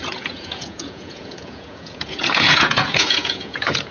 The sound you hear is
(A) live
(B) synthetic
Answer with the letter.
B